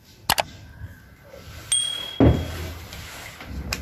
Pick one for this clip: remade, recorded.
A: recorded